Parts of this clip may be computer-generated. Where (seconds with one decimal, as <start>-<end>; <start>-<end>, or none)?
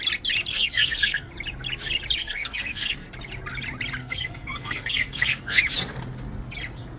0.5-1.3; 2.2-3.1; 4.0-5.6